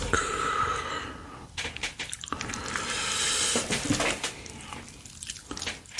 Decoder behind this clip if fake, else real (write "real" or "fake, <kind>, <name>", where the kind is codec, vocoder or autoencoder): real